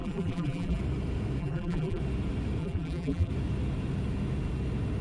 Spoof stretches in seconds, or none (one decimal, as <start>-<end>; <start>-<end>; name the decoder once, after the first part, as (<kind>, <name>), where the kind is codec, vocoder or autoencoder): 0.0-0.8 (vocoder, BigVGAN v2); 1.4-2.0; 2.6-3.3